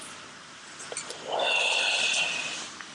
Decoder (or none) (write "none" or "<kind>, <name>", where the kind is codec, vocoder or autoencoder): none